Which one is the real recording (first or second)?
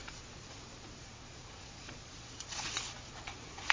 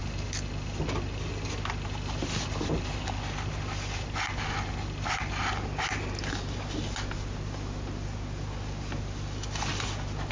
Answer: second